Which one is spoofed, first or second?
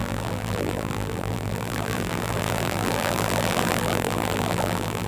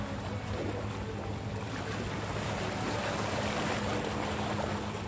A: first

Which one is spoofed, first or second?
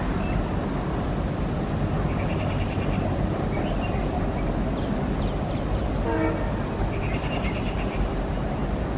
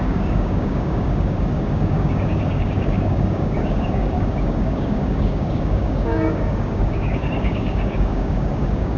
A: second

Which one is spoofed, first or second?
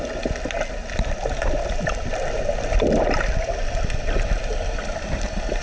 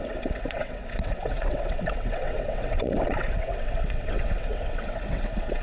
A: second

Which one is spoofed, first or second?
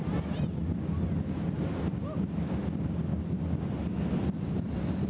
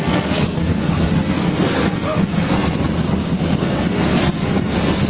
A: second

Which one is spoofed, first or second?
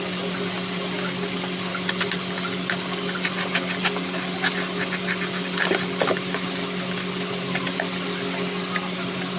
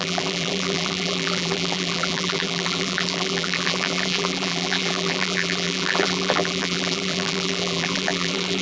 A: second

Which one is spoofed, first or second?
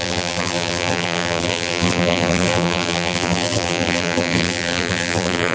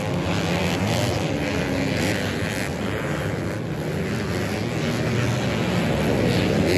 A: first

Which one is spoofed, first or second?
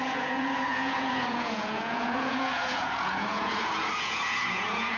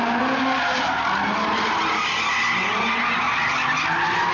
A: first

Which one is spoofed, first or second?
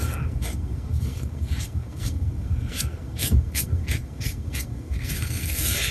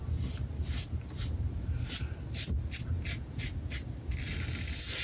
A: first